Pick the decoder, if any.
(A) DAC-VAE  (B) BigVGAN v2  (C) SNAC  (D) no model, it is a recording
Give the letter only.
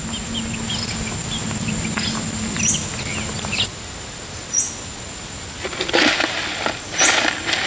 D